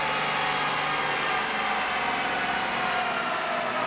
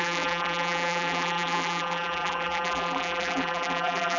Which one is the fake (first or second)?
second